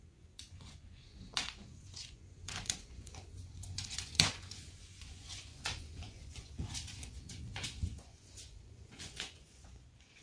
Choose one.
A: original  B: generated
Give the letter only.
B